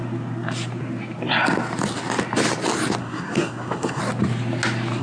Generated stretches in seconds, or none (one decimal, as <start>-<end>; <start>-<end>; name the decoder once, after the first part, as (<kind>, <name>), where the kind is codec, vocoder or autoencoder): 3.0-4.0 (codec, SNAC)